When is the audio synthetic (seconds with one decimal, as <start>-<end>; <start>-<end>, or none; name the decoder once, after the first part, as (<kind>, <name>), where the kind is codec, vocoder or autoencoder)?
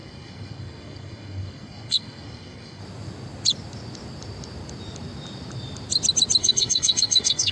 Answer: 0.0-2.8 (codec, SNAC); 6.4-7.5